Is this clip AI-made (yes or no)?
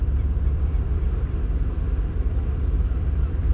yes